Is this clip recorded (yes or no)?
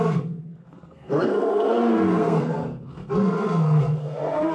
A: no